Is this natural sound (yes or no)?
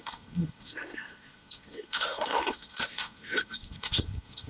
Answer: no